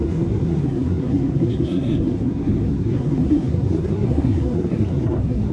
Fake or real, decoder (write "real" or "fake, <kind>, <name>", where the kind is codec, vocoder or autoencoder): fake, codec, SNAC